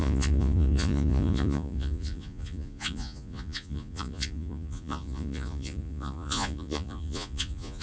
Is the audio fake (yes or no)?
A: yes